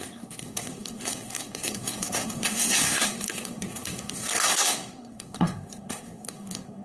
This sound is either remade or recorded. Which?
remade